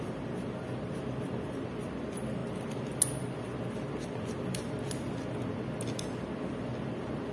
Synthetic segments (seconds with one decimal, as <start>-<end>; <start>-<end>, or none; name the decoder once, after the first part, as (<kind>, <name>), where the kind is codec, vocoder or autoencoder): none